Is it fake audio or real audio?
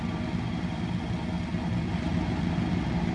real